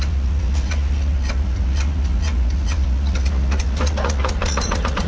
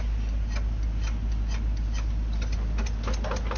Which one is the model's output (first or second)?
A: first